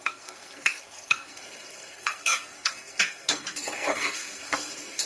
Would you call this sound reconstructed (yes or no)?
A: yes